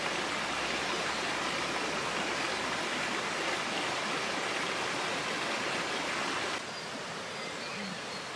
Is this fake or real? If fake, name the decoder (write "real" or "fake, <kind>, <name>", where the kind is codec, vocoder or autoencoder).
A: real